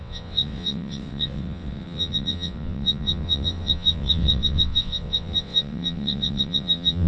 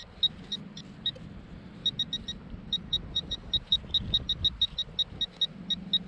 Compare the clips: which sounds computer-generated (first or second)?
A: first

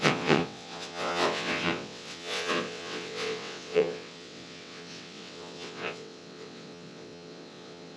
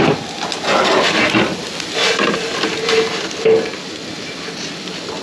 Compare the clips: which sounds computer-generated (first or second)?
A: first